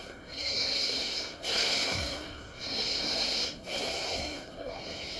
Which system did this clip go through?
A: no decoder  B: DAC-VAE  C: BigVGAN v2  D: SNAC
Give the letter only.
D